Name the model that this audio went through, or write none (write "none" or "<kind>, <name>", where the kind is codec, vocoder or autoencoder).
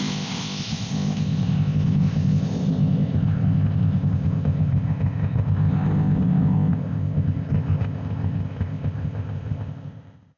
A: codec, ZipCodec